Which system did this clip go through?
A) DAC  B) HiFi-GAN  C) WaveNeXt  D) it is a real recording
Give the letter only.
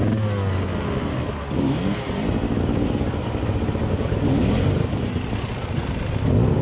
D